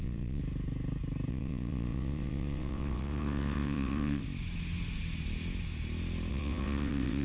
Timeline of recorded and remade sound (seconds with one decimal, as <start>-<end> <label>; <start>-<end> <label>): 0.0-0.4 remade; 0.4-1.3 recorded; 1.3-4.2 remade; 4.2-6.3 recorded; 6.3-7.2 remade